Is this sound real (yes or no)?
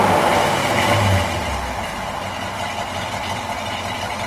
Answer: yes